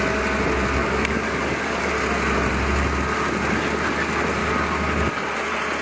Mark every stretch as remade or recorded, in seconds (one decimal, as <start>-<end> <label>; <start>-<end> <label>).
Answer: 0.0-0.8 recorded; 0.8-1.9 remade; 1.9-5.8 recorded